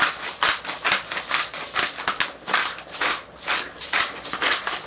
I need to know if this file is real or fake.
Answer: real